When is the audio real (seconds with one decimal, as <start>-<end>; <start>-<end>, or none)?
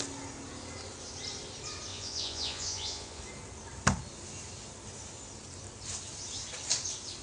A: 0.0-1.9; 3.2-7.2